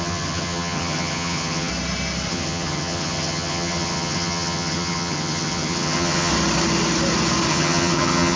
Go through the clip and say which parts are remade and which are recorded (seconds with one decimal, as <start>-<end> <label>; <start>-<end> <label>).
0.0-1.7 remade; 1.7-2.3 recorded; 2.3-6.3 remade; 6.3-7.5 recorded; 7.5-8.4 remade